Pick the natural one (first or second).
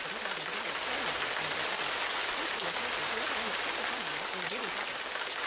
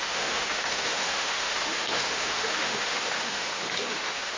first